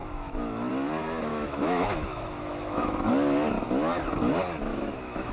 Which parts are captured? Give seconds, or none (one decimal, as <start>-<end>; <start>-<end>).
0.7-1.3; 3.1-4.7